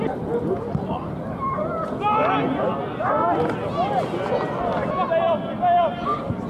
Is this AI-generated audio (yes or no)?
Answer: no